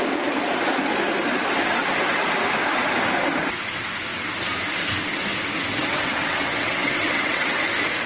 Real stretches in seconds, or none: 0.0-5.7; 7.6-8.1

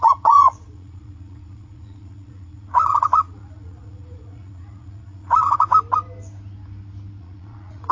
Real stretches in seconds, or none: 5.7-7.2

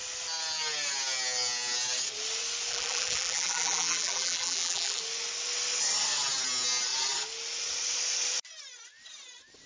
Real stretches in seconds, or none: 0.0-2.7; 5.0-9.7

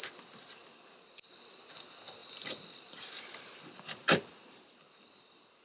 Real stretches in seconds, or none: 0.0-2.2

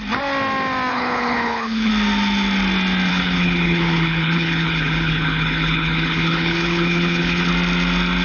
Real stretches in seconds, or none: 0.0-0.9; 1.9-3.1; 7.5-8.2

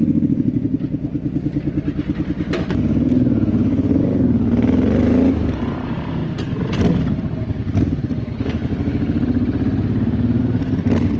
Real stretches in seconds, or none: 0.0-11.2